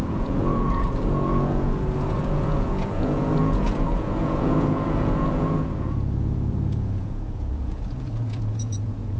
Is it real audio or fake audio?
fake